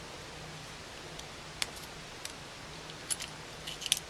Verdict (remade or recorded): recorded